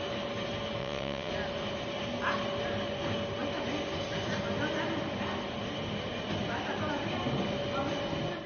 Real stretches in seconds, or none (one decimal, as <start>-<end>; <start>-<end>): 0.0-0.8; 1.3-8.5